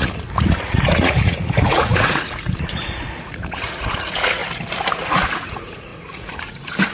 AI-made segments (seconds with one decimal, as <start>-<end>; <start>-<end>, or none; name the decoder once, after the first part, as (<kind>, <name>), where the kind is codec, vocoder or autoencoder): 0.0-4.4 (vocoder, Vocos); 4.9-6.9